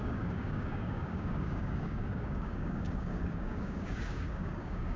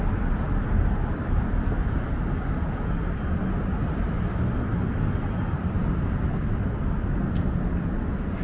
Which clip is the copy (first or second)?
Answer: first